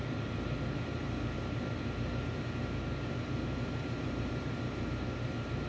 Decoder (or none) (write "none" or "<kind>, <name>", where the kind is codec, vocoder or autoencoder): vocoder, BigVGAN v2